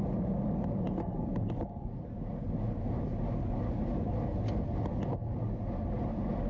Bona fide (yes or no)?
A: yes